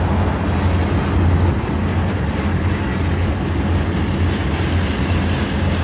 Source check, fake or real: real